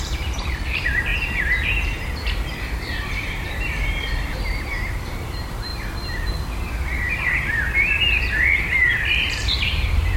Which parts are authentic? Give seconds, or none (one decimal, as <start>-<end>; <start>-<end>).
5.7-6.7